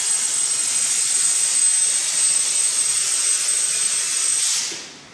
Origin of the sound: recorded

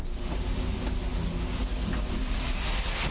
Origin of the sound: recorded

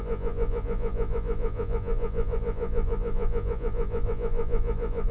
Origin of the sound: remade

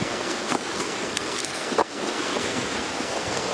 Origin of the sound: remade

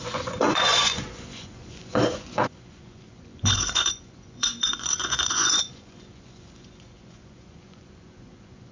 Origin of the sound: remade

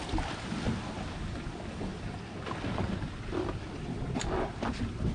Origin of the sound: recorded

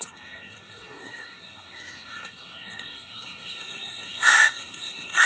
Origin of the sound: remade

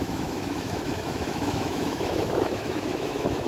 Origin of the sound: remade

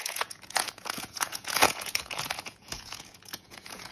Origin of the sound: remade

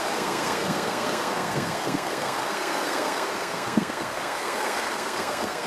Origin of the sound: remade